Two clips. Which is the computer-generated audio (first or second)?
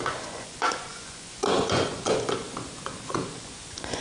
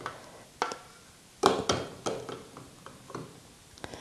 first